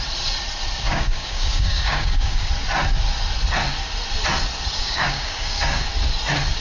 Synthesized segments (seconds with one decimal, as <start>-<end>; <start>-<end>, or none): 0.9-2.5; 4.8-5.9